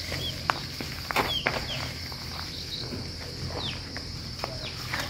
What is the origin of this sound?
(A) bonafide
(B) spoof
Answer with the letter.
A